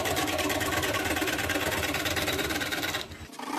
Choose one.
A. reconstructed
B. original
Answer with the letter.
B